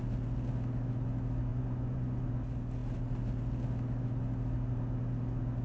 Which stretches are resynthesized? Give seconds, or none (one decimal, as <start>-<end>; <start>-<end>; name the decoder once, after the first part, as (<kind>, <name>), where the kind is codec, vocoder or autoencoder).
1.5-2.2 (vocoder, Vocos)